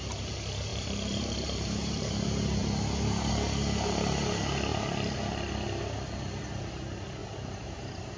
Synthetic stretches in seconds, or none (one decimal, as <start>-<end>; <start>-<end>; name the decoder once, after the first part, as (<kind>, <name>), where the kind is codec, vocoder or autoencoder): 0.7-2.1 (vocoder, BigVGAN v2); 7.2-8.2